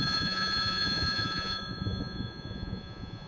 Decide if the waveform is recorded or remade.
remade